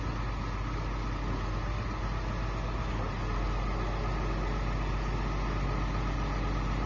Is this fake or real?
real